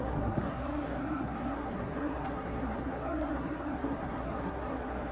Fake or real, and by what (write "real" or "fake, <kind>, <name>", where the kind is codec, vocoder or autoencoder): fake, codec, SNAC